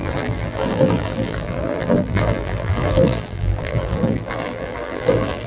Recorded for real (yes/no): no